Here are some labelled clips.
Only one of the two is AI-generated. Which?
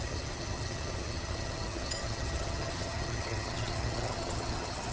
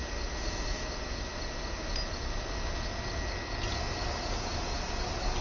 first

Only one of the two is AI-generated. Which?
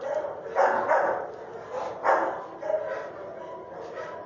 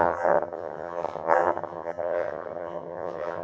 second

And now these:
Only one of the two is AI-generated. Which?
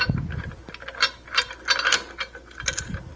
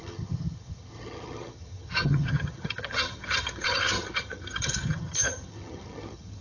second